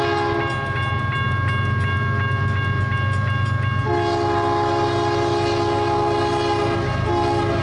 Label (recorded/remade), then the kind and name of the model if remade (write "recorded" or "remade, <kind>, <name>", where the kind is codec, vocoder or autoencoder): recorded